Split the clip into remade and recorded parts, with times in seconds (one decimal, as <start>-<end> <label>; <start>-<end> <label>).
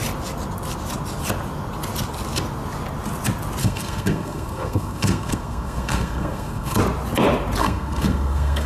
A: 0.0-3.6 recorded; 3.6-6.8 remade; 6.8-7.6 recorded; 7.6-8.7 remade